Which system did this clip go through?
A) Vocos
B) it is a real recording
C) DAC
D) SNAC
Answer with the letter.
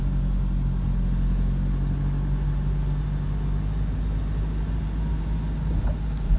B